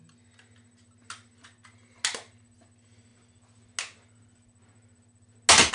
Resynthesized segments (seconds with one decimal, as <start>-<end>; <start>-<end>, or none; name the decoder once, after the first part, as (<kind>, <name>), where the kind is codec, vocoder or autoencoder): none